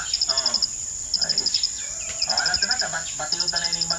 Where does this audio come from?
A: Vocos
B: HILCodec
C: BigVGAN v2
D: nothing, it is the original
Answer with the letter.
D